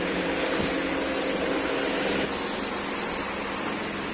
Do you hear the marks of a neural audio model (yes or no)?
no